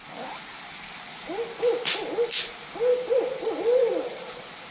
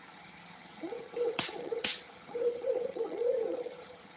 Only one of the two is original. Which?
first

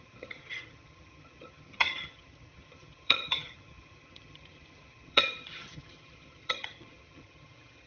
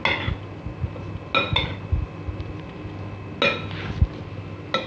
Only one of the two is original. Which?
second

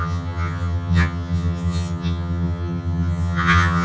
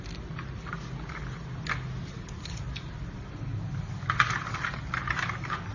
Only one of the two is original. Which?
second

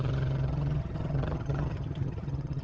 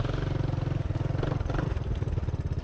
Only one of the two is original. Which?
second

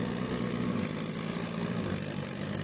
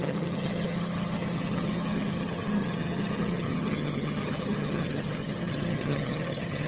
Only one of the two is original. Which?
first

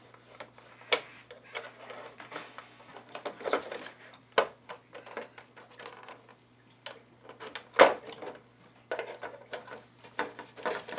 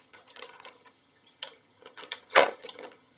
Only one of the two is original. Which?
first